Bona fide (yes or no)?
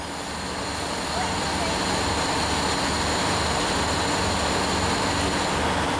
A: yes